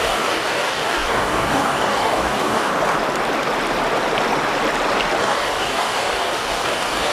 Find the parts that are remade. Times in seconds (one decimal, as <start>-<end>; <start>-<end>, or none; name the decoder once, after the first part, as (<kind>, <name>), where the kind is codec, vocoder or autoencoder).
0.0-2.7 (codec, DAC); 5.2-7.1